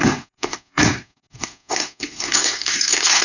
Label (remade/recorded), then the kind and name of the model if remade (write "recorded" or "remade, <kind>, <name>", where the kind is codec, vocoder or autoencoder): remade, codec, SNAC